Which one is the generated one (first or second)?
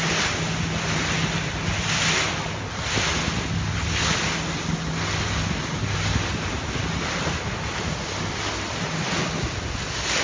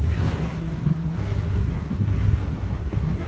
second